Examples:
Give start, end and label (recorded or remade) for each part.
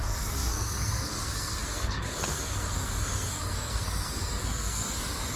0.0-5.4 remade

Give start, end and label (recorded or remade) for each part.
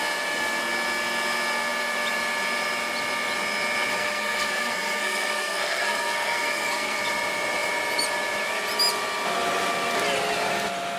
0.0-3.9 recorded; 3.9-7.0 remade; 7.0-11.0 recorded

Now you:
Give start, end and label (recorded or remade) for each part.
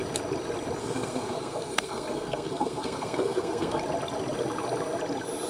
0.0-0.8 recorded; 0.8-3.8 remade; 3.8-5.5 recorded